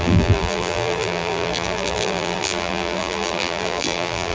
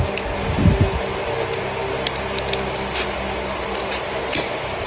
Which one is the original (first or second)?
second